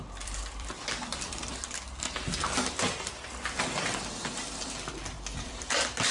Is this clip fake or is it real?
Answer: fake